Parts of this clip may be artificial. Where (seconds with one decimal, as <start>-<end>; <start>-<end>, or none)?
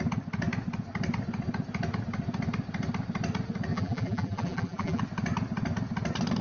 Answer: 3.7-5.0